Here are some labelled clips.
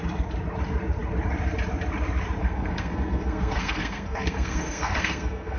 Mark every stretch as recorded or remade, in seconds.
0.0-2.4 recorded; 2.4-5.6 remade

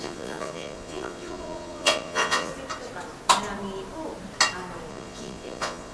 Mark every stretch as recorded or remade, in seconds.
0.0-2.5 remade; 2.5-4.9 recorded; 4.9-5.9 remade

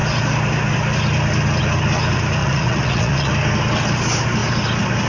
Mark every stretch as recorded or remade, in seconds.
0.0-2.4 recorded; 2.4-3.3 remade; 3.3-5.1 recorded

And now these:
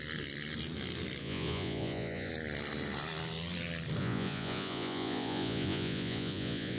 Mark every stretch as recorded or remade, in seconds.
0.0-1.2 recorded; 1.2-2.3 remade; 2.3-4.0 recorded; 4.0-6.8 remade

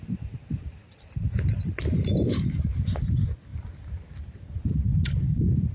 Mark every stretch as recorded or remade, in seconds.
0.0-2.1 recorded; 2.1-3.1 remade; 3.1-5.7 recorded

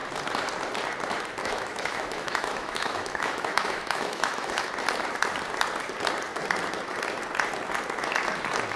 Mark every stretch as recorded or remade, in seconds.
0.0-1.4 recorded; 1.4-4.7 remade; 4.7-8.8 recorded